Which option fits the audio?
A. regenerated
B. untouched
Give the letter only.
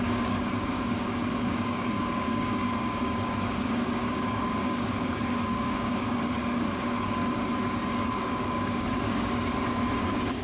A